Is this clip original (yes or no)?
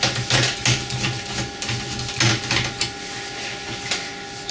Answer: yes